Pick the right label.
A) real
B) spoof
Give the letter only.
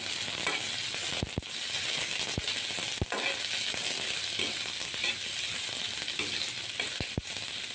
A